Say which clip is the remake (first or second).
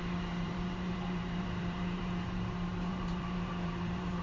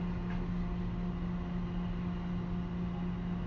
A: first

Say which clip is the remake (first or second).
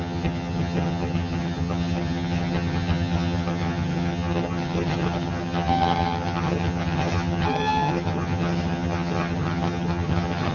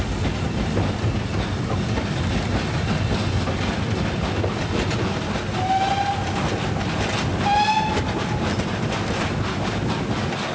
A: first